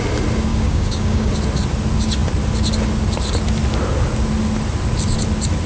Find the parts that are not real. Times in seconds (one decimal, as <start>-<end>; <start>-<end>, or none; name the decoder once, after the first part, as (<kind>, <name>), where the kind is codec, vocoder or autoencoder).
0.5-1.3 (codec, DAC)